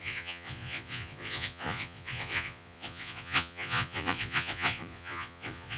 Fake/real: fake